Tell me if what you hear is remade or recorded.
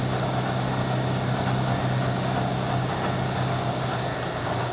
recorded